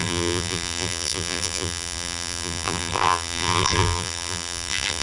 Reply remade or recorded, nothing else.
remade